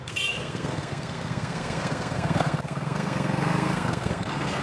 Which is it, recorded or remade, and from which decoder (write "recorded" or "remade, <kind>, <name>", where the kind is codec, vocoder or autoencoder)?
remade, codec, SNAC